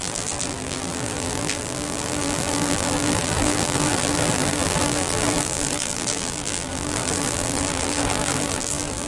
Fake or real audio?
fake